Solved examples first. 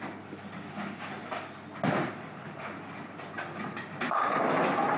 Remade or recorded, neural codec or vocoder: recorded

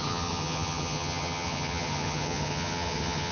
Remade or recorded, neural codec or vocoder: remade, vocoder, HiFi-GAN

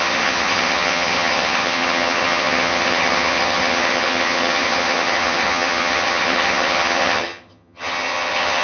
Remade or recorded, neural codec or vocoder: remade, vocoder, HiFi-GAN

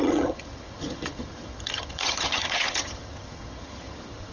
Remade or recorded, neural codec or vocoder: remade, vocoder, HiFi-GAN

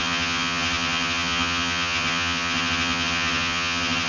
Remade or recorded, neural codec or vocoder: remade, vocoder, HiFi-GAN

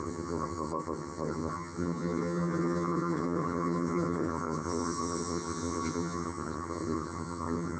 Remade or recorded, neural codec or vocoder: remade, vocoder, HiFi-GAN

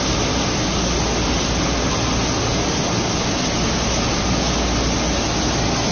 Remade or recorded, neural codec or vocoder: recorded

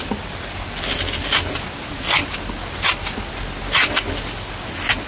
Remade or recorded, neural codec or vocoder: recorded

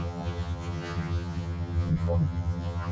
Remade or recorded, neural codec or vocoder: remade, vocoder, HiFi-GAN